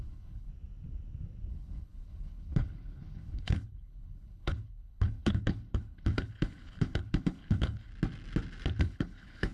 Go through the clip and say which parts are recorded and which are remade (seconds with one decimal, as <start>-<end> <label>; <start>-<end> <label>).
0.0-0.5 remade; 0.5-1.5 recorded; 1.5-7.9 remade; 7.9-8.8 recorded; 8.8-9.5 remade